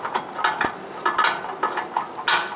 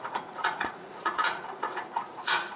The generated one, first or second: second